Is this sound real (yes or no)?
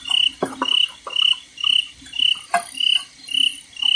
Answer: yes